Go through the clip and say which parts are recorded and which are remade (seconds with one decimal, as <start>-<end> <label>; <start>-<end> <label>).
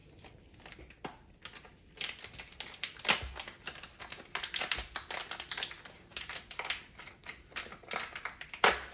0.0-8.9 recorded